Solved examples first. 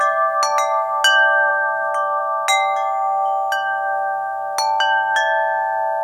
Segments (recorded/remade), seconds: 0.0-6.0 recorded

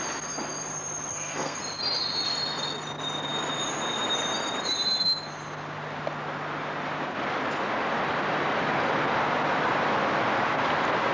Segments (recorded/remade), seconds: 0.0-1.1 recorded; 1.1-1.6 remade; 1.6-11.1 recorded

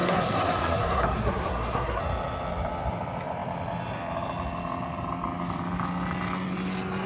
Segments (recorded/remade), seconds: 0.0-2.0 remade; 2.0-7.1 recorded

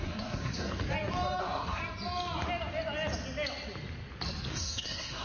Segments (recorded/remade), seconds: 0.0-0.8 remade; 0.8-1.4 recorded; 1.4-1.8 remade; 1.8-4.5 recorded; 4.5-5.2 remade

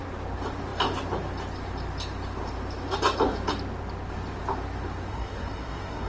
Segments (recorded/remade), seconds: 0.0-5.1 recorded; 5.1-6.1 remade